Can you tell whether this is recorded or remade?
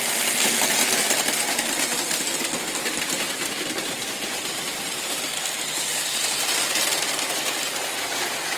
recorded